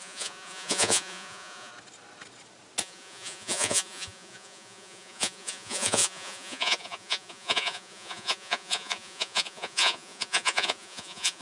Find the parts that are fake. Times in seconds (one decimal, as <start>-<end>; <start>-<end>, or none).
0.0-1.7; 2.8-11.4